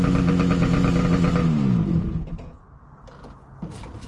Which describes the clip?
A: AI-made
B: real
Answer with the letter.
B